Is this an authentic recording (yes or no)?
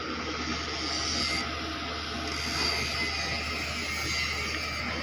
yes